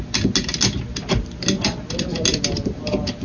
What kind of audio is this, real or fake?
real